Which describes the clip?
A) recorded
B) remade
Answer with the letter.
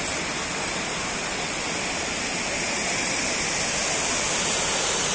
A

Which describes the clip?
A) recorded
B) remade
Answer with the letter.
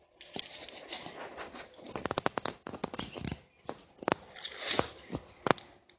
A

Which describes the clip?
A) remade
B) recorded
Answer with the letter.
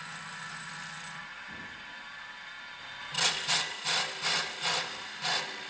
B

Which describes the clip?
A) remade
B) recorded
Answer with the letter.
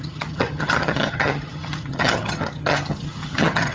A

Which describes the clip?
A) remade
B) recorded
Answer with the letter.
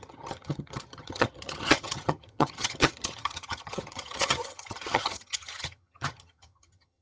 A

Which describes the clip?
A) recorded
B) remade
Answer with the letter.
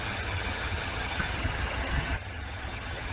B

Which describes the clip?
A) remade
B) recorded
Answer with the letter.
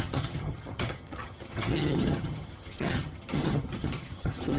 A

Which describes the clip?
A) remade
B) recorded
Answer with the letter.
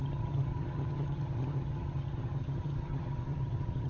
A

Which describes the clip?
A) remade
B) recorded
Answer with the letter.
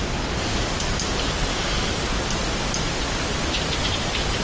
B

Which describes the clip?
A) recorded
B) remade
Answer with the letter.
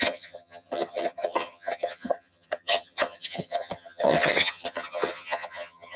B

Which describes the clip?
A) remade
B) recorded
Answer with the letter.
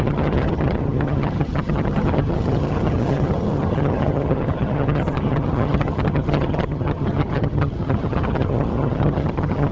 A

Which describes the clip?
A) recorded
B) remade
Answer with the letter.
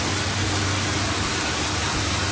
A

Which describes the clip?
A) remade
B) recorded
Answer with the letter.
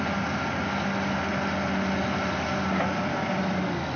B